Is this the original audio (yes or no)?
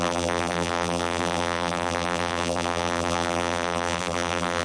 no